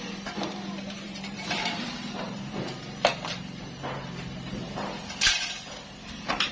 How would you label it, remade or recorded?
remade